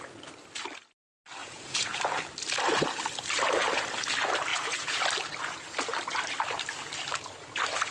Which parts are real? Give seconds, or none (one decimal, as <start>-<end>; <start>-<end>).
0.0-1.4; 2.0-4.5; 5.0-7.9